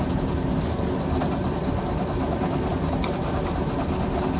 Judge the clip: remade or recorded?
recorded